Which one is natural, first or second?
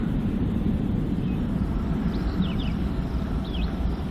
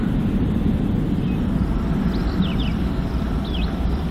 second